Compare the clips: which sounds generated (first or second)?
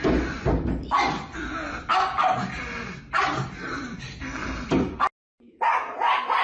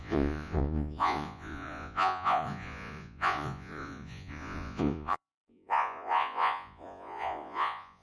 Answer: second